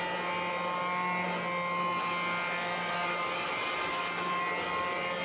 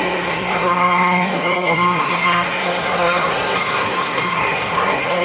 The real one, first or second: first